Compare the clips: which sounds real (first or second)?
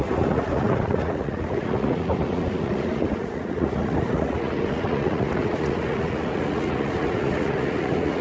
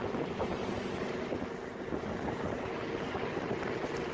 second